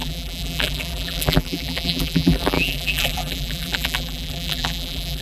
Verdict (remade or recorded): remade